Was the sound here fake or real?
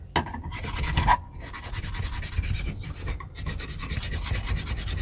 real